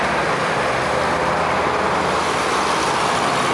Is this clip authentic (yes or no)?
yes